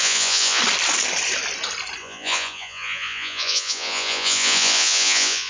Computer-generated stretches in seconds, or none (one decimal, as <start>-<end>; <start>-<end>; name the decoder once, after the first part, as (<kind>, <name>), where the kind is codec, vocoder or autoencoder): 0.0-0.6 (vocoder, Vocos); 2.0-5.5